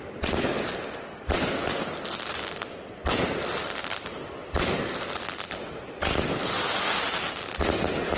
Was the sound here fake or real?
real